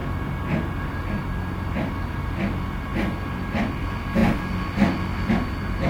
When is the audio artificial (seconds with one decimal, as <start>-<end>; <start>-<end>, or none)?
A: none